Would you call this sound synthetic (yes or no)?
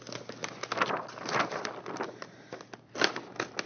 no